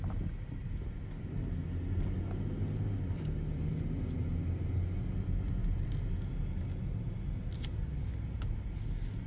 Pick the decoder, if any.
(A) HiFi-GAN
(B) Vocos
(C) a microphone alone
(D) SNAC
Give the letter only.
C